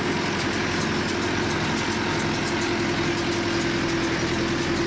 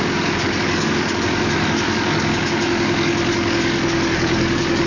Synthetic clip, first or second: second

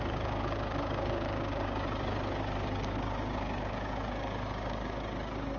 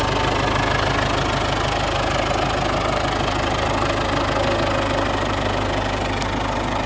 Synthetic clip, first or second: first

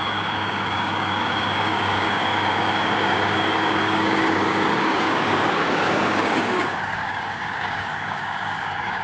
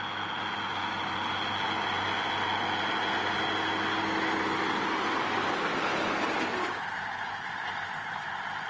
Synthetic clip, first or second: first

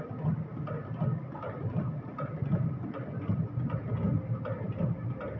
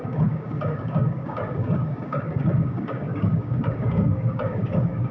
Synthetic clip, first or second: second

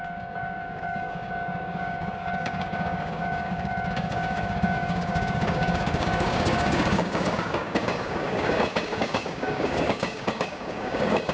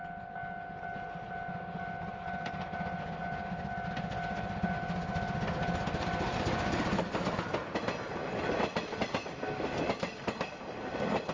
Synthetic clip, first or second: first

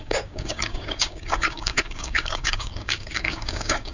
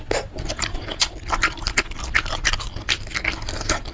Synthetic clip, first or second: first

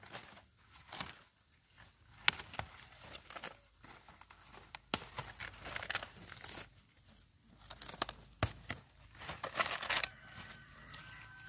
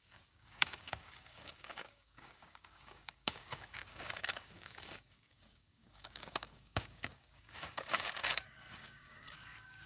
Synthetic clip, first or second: second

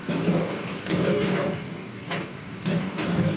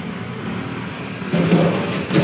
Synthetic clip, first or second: first